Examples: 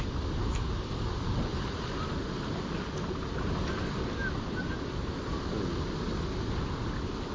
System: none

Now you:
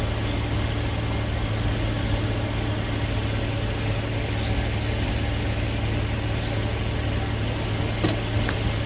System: none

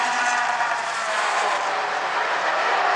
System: vocoder, BigVGAN v2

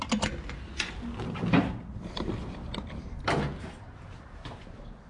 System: none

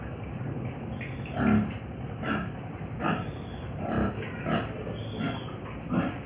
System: none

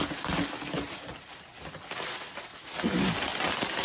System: none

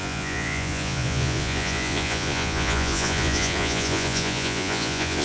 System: vocoder, Vocos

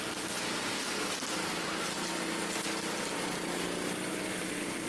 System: none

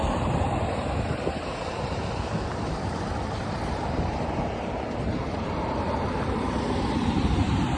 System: vocoder, BigVGAN v2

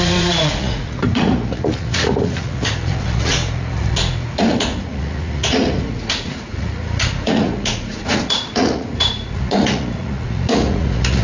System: vocoder, Vocos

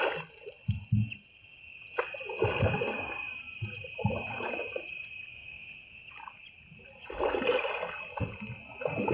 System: none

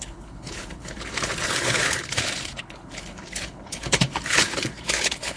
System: codec, HILCodec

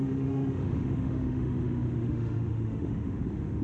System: autoencoder, DAC-VAE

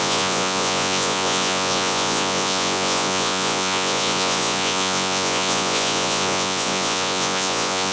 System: vocoder, Vocos